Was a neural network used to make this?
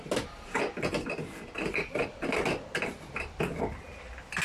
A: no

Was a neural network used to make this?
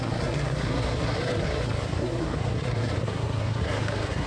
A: yes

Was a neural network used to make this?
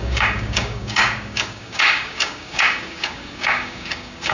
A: yes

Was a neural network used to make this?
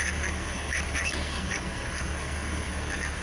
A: yes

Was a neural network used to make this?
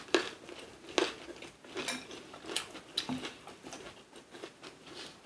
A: no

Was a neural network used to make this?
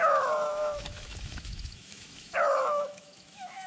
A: yes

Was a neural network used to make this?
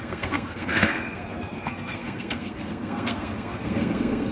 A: yes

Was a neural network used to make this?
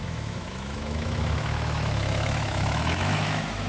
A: yes